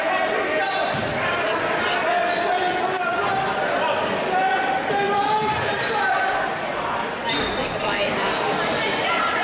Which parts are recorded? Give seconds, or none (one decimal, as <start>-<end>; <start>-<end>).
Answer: 0.0-9.4